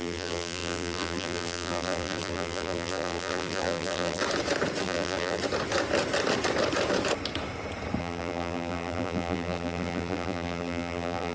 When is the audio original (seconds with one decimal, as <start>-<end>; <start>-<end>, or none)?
4.2-4.8; 5.4-8.0